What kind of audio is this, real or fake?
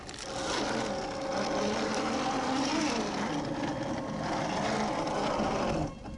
real